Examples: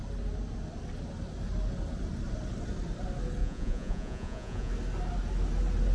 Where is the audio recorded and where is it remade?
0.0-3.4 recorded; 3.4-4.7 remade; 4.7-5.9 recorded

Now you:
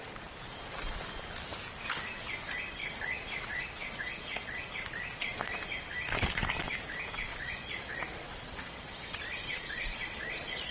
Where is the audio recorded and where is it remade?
0.0-2.8 recorded; 2.8-4.6 remade; 4.6-7.3 recorded; 7.3-10.7 remade

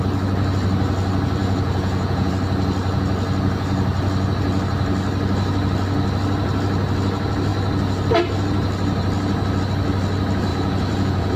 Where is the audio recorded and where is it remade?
0.0-1.4 recorded; 1.4-2.3 remade; 2.3-10.5 recorded; 10.5-11.4 remade

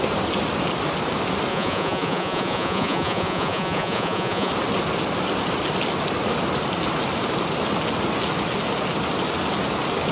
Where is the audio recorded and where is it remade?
0.0-1.5 recorded; 1.5-4.5 remade; 4.5-10.1 recorded

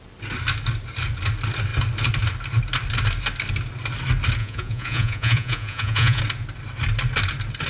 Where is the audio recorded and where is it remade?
0.0-4.4 recorded; 4.4-6.2 remade; 6.2-7.7 recorded

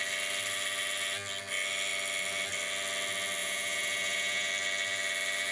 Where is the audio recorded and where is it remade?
0.0-3.4 recorded; 3.4-4.5 remade; 4.5-5.5 recorded

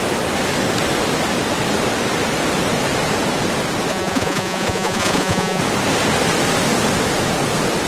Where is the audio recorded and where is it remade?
0.0-3.9 recorded; 3.9-5.6 remade; 5.6-7.9 recorded